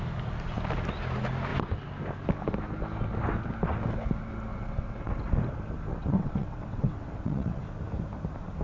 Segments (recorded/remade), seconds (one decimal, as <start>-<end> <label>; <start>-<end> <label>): 0.0-4.5 recorded; 4.5-5.3 remade; 5.3-5.9 recorded; 5.9-7.6 remade; 7.6-8.6 recorded